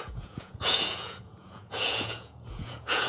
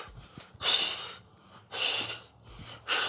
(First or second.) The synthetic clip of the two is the first